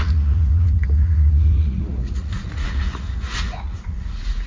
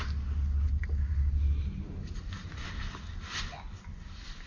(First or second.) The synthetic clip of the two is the first